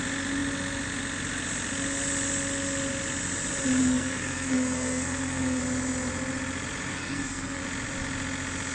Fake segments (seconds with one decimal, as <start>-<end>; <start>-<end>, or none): 3.8-5.6; 6.9-7.6